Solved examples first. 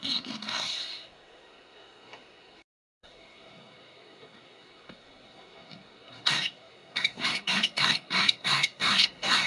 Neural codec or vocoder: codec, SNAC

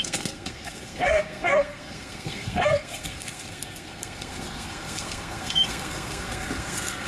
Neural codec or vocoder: codec, SNAC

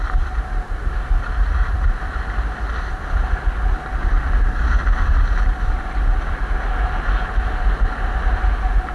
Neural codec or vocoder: none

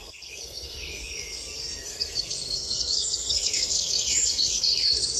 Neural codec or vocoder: codec, SNAC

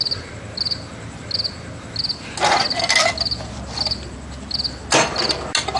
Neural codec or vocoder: none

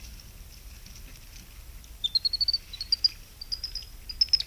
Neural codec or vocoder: none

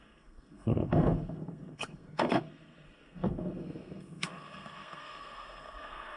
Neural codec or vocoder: codec, SNAC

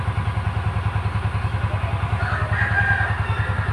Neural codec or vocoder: none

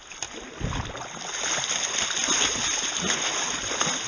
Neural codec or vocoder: none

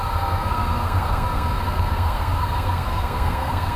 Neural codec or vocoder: codec, SNAC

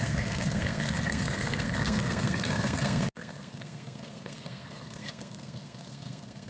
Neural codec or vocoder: codec, SNAC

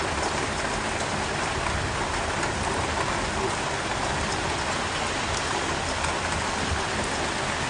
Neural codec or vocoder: none